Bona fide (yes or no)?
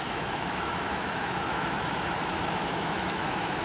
no